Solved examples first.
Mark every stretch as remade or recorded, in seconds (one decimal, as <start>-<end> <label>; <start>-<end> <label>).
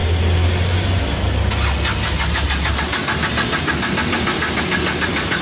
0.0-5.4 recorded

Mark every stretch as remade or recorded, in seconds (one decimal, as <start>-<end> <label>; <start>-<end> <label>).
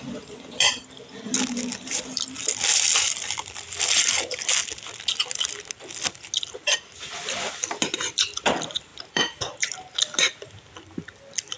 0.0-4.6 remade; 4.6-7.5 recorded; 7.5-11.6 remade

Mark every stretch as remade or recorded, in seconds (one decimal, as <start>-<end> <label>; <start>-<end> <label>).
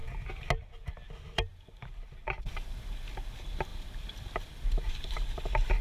0.0-3.7 recorded; 3.7-4.9 remade; 4.9-5.8 recorded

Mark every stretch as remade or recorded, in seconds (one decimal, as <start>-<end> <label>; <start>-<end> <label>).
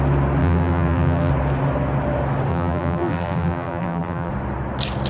0.0-0.4 recorded; 0.4-1.3 remade; 1.3-2.5 recorded; 2.5-4.3 remade; 4.3-5.1 recorded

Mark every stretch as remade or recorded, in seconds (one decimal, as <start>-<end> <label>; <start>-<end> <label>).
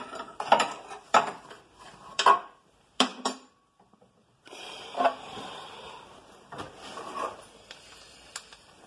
0.0-8.9 remade